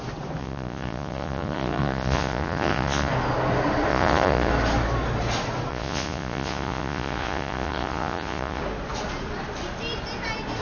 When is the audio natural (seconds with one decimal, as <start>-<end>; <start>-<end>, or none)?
0.0-0.4; 3.1-3.9; 4.5-5.7; 8.6-10.6